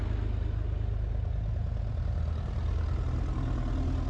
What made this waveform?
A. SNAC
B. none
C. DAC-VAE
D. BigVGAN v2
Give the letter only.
B